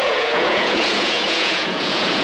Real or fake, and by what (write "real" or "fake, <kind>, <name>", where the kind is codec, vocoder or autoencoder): fake, vocoder, Vocos